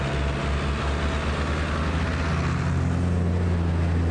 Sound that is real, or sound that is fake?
real